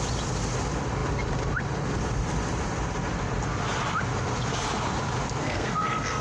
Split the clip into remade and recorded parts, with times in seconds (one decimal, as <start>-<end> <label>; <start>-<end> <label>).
0.0-5.4 recorded; 5.4-6.2 remade